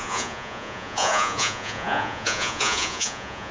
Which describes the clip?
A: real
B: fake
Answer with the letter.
B